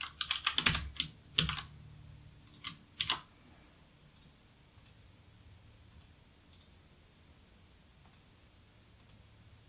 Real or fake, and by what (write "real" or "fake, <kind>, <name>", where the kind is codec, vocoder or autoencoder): real